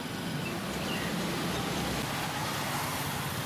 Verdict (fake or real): real